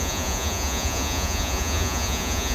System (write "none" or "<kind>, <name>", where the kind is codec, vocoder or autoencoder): vocoder, Vocos